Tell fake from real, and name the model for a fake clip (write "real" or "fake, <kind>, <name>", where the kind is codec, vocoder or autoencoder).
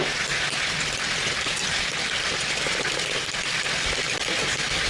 fake, vocoder, BigVGAN v2